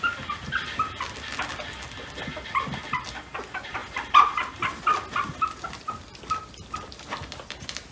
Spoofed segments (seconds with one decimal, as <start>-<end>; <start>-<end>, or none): none